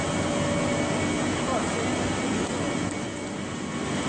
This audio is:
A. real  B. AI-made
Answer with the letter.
A